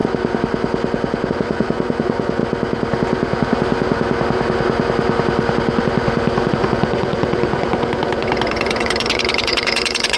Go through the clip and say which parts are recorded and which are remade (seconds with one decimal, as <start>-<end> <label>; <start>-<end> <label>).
0.0-1.3 recorded; 1.3-2.4 remade; 2.4-6.5 recorded; 6.5-10.2 remade